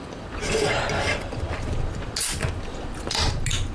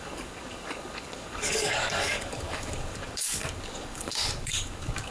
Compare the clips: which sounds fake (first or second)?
second